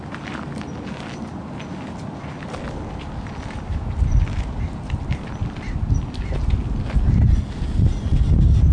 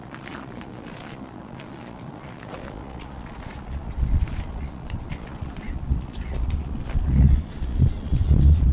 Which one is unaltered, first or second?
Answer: first